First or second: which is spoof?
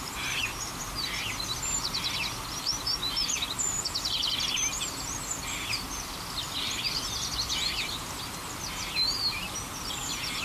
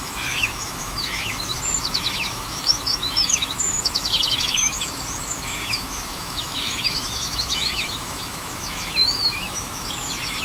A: second